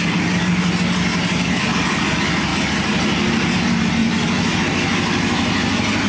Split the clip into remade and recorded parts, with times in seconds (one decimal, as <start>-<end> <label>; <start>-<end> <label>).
0.0-4.0 recorded; 4.0-4.6 remade; 4.6-6.1 recorded